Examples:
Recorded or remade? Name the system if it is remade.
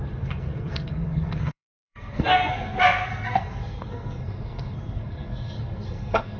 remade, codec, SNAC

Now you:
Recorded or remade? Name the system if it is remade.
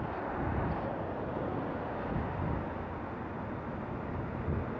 recorded